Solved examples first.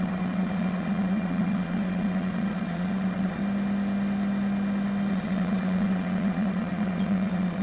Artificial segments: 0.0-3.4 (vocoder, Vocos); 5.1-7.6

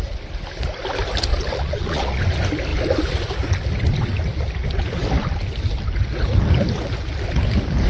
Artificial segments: 1.3-2.2 (vocoder, Vocos)

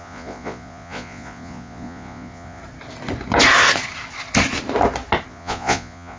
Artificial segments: 0.0-2.6 (vocoder, Vocos); 5.3-6.2

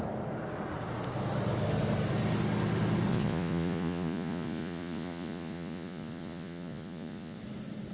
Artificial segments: 3.1-7.4 (vocoder, Vocos)